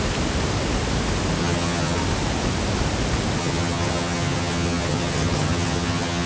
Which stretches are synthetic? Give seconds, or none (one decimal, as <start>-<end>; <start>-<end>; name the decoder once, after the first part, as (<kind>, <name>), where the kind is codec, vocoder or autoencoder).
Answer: 1.4-2.0 (vocoder, HiFi-GAN); 3.4-6.3